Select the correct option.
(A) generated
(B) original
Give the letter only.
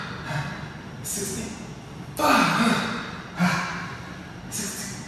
B